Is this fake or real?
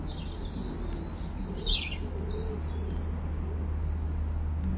real